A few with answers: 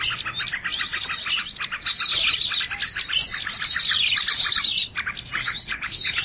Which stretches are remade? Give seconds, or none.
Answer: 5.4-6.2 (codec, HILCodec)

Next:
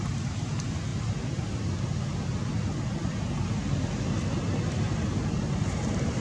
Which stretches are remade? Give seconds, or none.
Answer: none

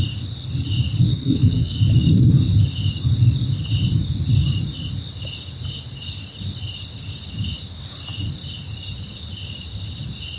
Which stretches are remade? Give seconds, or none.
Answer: 1.1-1.8 (codec, SNAC)

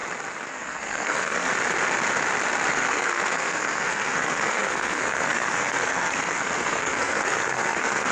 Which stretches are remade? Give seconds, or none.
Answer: 0.5-1.5 (codec, SNAC); 2.7-8.1

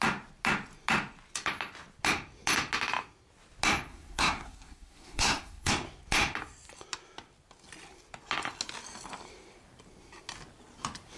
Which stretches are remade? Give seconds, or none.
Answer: 3.9-5.7 (codec, SNAC)